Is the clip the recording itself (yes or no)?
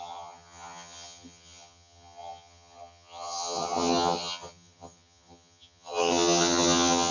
no